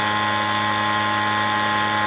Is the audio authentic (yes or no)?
yes